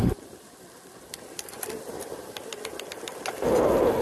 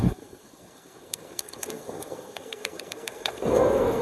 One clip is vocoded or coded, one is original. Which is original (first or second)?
first